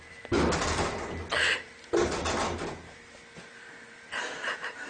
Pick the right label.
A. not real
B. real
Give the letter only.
B